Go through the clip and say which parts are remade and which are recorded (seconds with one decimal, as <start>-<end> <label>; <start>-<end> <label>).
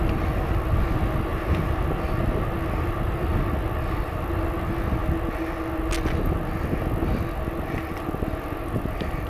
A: 0.0-9.3 recorded